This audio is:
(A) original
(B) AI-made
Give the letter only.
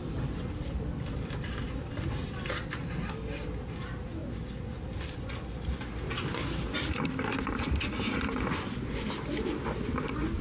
A